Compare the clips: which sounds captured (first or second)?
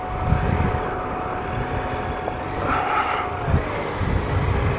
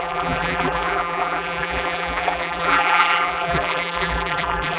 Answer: first